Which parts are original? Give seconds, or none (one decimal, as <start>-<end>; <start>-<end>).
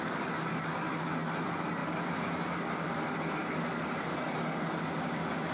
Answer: 0.0-5.5